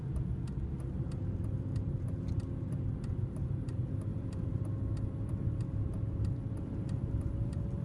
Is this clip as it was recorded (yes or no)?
no